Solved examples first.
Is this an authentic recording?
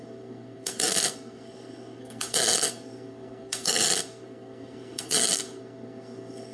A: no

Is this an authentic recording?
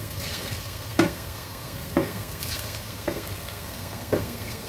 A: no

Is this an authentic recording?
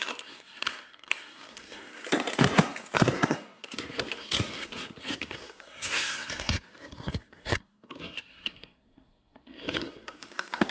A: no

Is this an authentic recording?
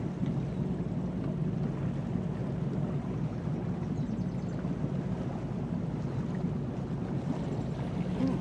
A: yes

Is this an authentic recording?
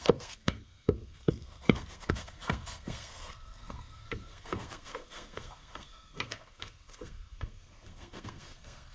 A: no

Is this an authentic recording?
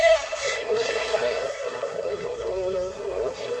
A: no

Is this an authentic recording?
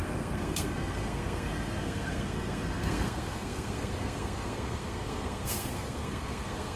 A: no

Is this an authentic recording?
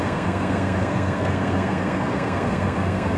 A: no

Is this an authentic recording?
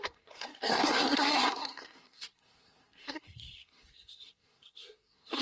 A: no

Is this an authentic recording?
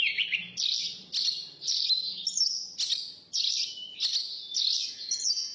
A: yes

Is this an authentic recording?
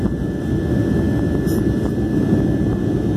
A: yes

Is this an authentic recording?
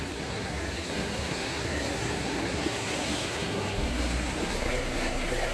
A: no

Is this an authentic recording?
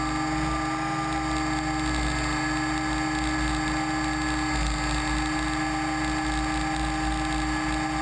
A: yes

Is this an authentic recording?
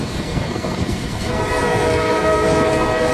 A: no